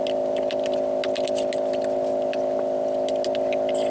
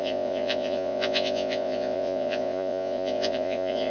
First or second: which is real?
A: first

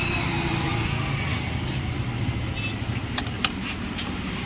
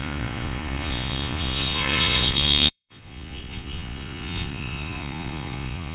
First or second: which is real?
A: first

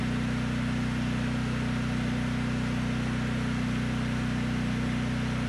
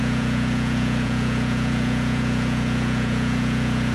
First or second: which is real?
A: first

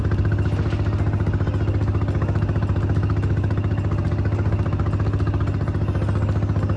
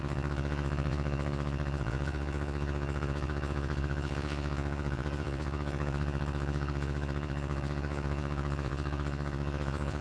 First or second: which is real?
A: first